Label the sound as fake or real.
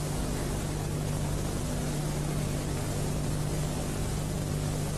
real